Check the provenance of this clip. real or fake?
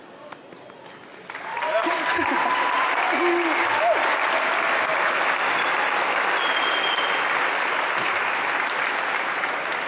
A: real